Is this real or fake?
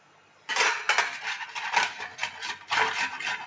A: real